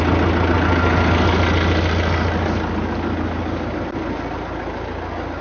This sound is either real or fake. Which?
real